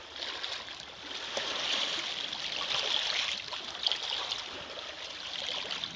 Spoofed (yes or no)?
no